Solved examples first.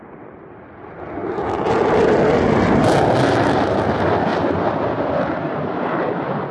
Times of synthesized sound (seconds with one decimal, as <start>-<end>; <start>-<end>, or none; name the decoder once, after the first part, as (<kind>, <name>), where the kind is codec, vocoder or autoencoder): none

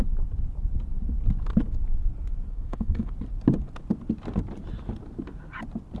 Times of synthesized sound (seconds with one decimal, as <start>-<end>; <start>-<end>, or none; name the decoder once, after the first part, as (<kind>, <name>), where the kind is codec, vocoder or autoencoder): 2.5-3.1 (codec, SNAC)

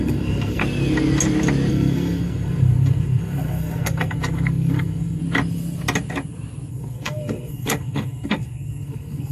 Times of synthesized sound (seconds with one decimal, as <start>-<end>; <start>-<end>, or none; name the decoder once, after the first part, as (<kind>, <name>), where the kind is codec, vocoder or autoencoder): 0.0-0.6 (codec, SNAC); 1.7-5.2; 6.7-9.3

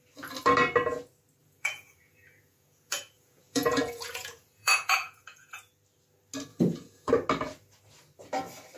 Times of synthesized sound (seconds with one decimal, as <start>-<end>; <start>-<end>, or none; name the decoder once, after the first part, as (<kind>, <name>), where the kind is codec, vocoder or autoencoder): 1.4-5.7 (vocoder, Vocos); 6.5-7.1

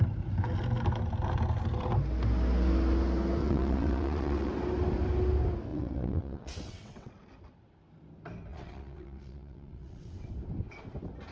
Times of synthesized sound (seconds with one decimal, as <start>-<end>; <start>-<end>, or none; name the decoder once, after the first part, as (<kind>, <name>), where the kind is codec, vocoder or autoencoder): 3.4-4.5 (vocoder, WaveNeXt); 5.7-7.1; 8.5-10.3

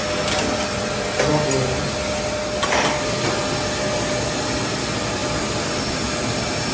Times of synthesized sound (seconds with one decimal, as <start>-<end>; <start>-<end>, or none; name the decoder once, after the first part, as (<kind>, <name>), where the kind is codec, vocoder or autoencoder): 5.2-5.8 (vocoder, BigVGAN v2)